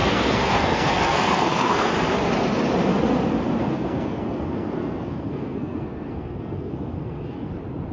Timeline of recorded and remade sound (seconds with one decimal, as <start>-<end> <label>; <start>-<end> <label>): 0.0-1.9 remade; 1.9-3.6 recorded; 3.6-7.5 remade; 7.5-7.9 recorded